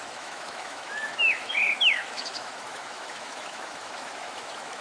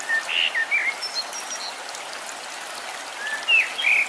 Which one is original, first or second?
second